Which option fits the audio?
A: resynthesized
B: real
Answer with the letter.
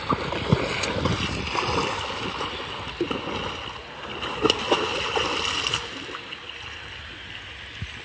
B